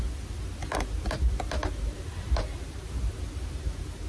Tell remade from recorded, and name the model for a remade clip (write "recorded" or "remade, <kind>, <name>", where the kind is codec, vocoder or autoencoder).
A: recorded